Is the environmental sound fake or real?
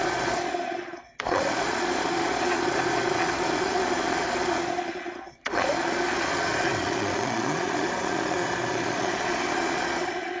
fake